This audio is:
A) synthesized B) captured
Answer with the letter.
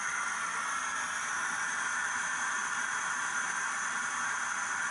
B